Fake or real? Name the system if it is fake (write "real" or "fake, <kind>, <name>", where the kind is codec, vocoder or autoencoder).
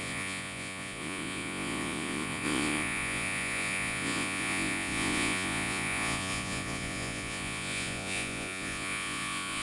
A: fake, vocoder, Vocos